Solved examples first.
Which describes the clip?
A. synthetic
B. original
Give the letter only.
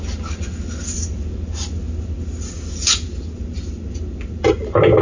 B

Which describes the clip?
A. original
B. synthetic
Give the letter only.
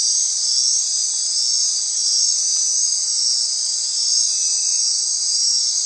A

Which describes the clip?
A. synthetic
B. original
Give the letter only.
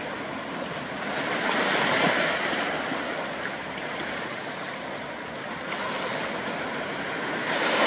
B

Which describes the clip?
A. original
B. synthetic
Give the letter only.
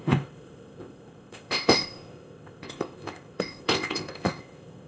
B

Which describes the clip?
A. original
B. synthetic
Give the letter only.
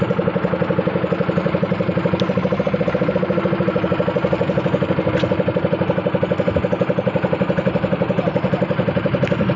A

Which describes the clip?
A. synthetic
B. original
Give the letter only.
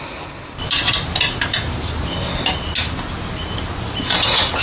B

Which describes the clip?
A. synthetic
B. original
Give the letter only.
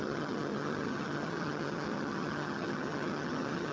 A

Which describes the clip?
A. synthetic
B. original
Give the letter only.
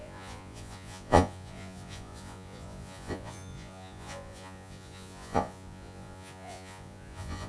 A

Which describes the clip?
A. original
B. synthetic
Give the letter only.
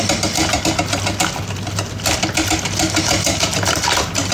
A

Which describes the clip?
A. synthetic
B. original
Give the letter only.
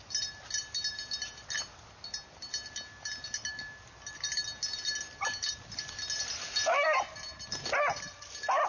B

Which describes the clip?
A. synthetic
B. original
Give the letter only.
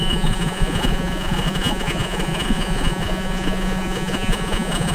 A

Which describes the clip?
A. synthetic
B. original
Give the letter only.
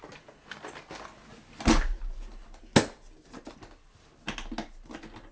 B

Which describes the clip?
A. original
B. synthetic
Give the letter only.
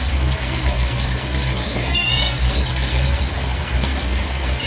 B